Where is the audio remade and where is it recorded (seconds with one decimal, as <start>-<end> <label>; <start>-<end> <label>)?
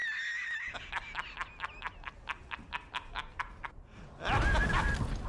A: 0.0-5.3 recorded